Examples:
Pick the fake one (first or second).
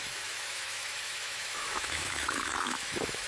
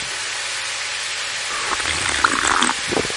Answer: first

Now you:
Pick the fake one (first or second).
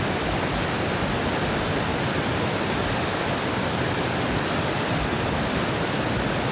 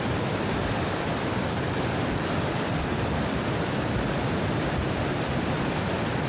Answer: second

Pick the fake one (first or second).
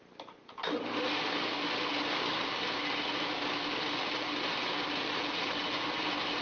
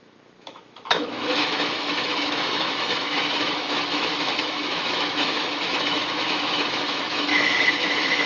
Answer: second